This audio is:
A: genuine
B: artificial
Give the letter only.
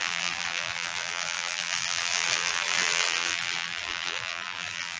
B